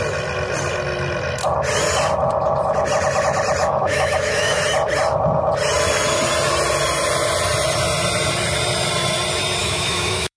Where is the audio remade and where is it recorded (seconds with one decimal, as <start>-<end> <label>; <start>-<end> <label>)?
0.0-3.6 recorded; 3.6-4.6 remade; 4.6-9.6 recorded; 9.6-10.4 remade